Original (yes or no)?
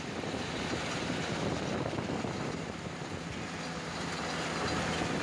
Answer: yes